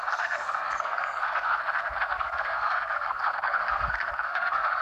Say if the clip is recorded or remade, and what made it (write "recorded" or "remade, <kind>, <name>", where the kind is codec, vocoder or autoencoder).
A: remade, codec, SNAC